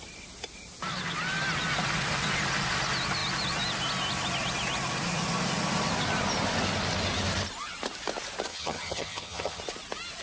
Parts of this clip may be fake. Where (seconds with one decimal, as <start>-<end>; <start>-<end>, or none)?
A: 8.5-9.6